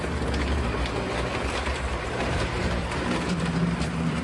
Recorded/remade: remade